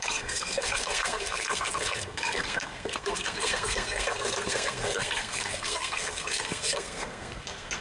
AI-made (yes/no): yes